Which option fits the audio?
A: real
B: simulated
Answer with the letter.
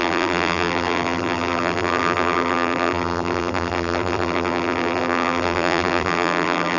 B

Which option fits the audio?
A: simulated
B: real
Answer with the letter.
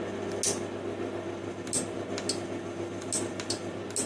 B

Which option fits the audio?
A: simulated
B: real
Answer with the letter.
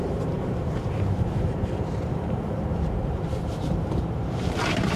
A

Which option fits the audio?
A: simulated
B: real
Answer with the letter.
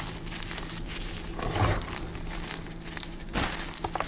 B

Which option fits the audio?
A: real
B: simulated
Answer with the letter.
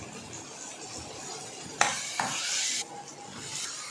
A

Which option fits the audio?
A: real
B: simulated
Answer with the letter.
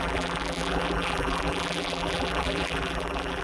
B